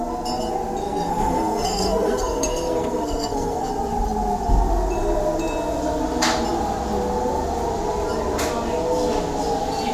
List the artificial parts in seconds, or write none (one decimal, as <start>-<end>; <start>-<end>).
0.8-3.7